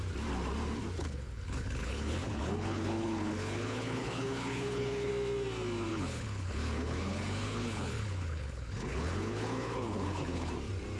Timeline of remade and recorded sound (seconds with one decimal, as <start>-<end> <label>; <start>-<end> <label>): 0.0-1.0 recorded; 1.0-5.1 remade; 5.1-5.9 recorded; 5.9-10.5 remade; 10.5-11.0 recorded